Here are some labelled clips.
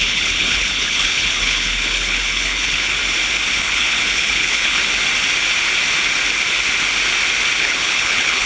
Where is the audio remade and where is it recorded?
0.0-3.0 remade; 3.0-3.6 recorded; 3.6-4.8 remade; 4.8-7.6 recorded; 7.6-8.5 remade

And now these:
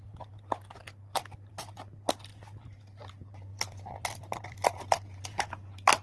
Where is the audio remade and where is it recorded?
0.0-6.0 recorded

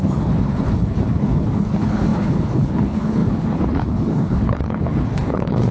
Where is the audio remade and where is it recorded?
0.0-5.7 remade

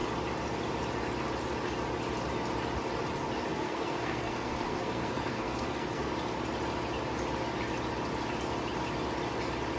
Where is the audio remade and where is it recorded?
0.0-3.5 recorded; 3.5-6.1 remade; 6.1-9.8 recorded

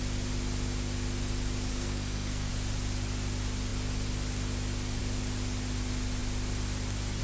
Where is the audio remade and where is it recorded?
0.0-1.7 recorded; 1.7-2.5 remade; 2.5-7.2 recorded

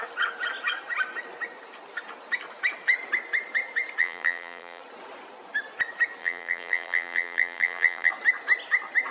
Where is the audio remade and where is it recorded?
0.0-4.0 recorded; 4.0-4.8 remade; 4.8-6.2 recorded; 6.2-8.1 remade; 8.1-9.1 recorded